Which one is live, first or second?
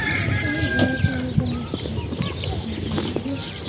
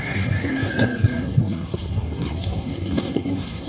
first